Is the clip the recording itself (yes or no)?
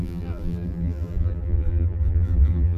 no